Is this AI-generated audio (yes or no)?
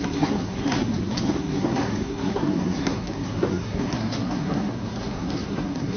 yes